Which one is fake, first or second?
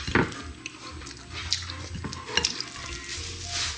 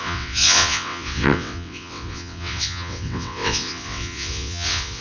second